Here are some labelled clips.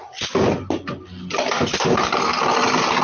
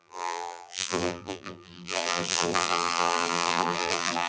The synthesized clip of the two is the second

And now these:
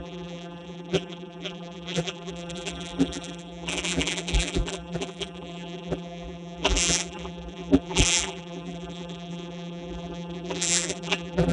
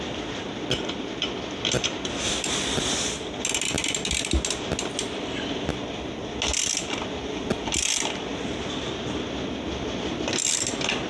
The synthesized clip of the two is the first